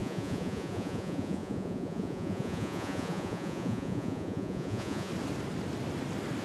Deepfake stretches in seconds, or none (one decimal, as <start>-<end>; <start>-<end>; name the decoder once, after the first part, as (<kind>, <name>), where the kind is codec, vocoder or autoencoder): 0.0-5.1 (vocoder, Vocos)